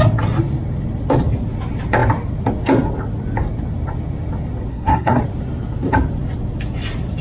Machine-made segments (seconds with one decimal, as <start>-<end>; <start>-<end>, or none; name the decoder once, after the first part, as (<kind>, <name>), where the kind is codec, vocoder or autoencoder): 4.7-5.2 (codec, SNAC)